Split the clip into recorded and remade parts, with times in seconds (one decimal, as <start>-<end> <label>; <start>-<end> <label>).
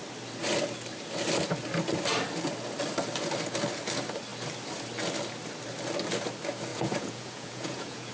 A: 0.0-6.7 recorded; 6.7-8.1 remade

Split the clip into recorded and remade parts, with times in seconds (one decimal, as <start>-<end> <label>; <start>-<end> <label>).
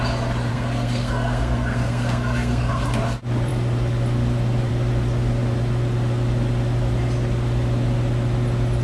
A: 0.0-0.5 recorded; 0.5-2.8 remade; 2.8-8.8 recorded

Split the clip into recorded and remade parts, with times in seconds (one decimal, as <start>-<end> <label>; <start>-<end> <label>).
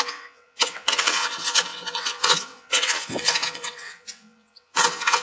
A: 0.0-5.2 remade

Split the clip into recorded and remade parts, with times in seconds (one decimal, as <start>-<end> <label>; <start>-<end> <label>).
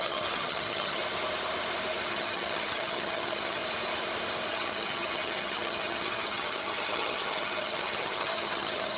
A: 0.0-1.0 remade; 1.0-2.1 recorded; 2.1-3.6 remade; 3.6-4.5 recorded; 4.5-9.0 remade